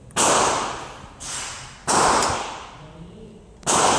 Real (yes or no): yes